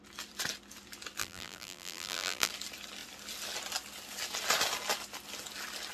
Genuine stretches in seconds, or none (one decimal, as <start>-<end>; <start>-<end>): 0.0-1.2; 2.5-5.9